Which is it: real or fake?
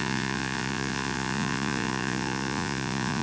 fake